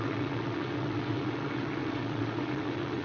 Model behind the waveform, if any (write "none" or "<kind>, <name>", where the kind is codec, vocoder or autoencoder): vocoder, WaveNeXt